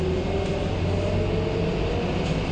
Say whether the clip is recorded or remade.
recorded